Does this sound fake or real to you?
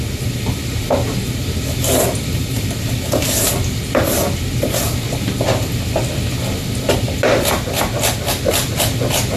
real